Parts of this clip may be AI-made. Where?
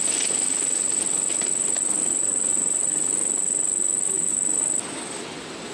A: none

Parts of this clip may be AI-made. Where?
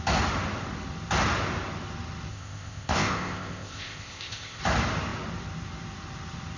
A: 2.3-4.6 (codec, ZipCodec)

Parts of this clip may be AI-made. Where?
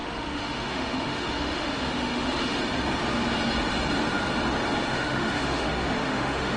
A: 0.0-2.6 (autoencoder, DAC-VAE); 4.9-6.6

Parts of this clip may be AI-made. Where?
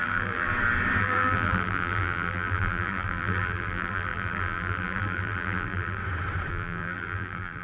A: 0.0-0.5 (vocoder, BigVGAN v2); 1.0-6.0; 6.5-7.6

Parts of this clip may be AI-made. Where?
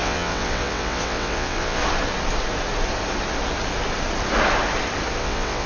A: 0.0-1.8 (vocoder, WaveNeXt); 5.2-5.7